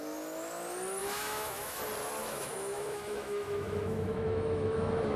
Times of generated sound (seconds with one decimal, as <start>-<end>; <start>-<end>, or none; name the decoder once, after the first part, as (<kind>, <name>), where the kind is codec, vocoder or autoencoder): 1.0-1.8 (autoencoder, DAC-VAE); 2.2-5.2